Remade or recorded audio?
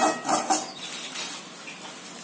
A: recorded